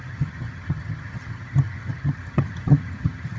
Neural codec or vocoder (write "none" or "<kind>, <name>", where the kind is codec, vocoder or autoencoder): vocoder, HiFi-GAN